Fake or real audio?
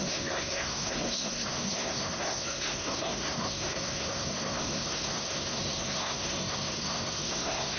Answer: fake